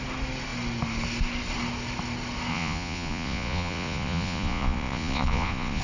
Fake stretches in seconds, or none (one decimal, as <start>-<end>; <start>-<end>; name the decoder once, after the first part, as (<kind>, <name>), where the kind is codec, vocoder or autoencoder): 2.5-5.8 (vocoder, Vocos)